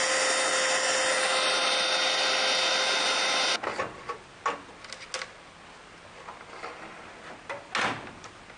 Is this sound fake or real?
real